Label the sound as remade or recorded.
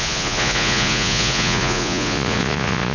remade